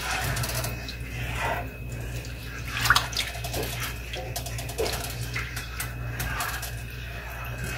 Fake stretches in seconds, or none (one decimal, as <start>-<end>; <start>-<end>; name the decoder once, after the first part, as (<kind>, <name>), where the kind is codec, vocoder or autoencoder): none

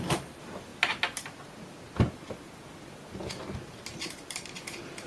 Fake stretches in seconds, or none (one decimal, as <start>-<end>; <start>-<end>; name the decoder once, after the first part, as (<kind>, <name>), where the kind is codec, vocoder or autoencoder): 0.0-0.7 (vocoder, BigVGAN v2); 3.8-5.1

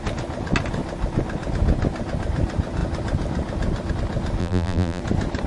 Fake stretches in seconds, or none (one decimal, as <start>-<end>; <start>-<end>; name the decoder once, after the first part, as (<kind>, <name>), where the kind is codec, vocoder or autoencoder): 4.4-5.0 (vocoder, BigVGAN v2)

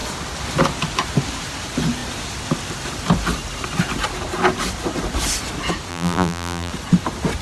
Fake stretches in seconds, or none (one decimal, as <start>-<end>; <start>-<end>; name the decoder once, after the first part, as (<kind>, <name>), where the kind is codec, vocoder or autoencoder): 5.9-6.7 (vocoder, BigVGAN v2)

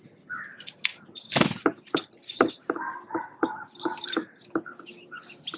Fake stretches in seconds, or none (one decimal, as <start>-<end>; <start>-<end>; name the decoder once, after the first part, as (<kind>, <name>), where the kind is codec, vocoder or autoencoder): 0.9-4.3 (vocoder, BigVGAN v2)

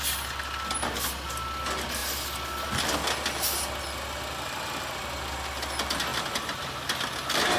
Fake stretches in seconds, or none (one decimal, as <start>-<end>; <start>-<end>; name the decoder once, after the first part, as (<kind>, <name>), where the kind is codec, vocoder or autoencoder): none